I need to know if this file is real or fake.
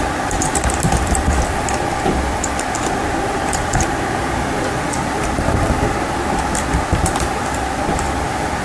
fake